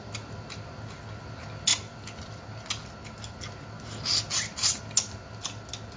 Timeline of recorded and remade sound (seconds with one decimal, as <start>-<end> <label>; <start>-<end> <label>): 0.0-6.0 recorded